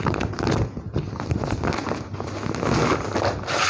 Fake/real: real